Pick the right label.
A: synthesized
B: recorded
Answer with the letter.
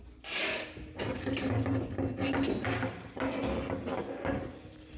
B